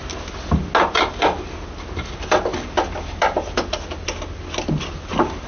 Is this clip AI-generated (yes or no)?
no